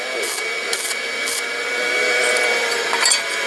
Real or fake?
real